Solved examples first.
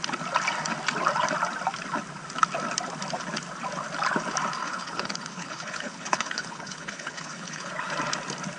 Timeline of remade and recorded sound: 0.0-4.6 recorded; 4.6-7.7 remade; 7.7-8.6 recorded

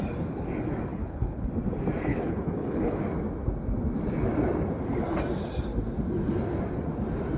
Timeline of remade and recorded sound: 0.0-0.9 recorded; 0.9-1.5 remade; 1.5-2.1 recorded; 2.1-3.0 remade; 3.0-7.4 recorded

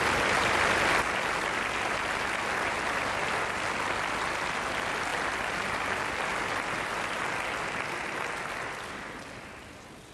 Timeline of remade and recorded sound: 0.0-10.1 recorded

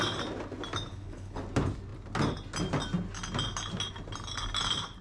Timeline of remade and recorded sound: 0.0-0.9 recorded; 0.9-1.4 remade; 1.4-5.0 recorded

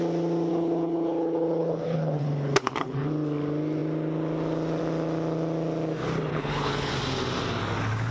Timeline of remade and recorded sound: 0.0-0.5 recorded; 0.5-3.1 remade; 3.1-6.3 recorded; 6.3-6.9 remade; 6.9-8.1 recorded